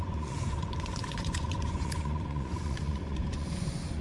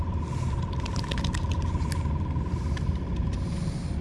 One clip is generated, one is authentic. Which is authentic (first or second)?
second